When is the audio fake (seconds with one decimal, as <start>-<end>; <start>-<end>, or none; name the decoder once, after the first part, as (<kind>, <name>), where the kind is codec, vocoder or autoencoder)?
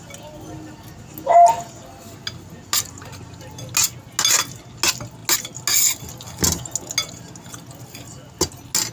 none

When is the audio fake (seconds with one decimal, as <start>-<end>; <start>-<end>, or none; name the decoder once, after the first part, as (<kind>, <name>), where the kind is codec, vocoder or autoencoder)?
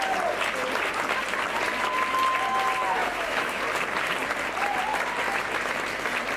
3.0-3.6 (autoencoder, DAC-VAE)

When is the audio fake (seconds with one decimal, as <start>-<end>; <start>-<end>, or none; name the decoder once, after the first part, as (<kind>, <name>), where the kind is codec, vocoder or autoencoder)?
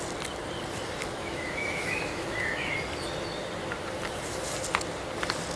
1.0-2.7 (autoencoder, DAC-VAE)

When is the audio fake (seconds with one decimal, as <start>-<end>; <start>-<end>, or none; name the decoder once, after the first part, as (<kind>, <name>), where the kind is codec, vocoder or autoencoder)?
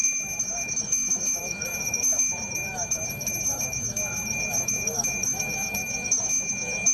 0.0-6.9 (autoencoder, DAC-VAE)